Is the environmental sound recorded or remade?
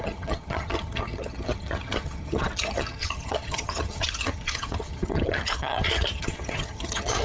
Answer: remade